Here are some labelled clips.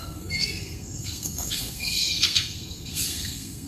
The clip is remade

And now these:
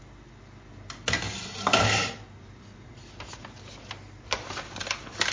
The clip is recorded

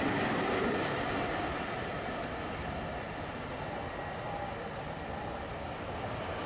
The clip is recorded